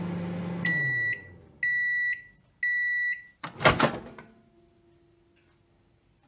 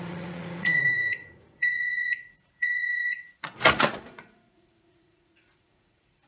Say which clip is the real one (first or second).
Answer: first